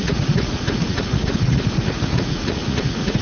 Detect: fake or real fake